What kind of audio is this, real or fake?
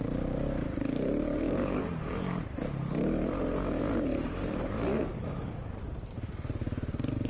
fake